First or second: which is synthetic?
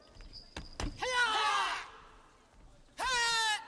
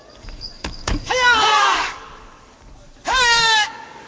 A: second